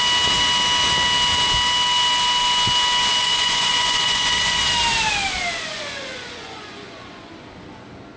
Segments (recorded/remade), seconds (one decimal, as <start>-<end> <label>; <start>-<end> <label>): 0.0-3.2 recorded; 3.2-4.6 remade; 4.6-5.7 recorded; 5.7-7.3 remade; 7.3-8.2 recorded